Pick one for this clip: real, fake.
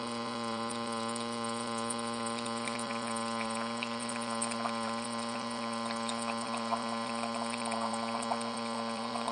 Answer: fake